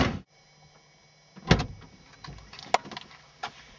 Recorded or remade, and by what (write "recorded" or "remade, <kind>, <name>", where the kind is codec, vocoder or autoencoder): recorded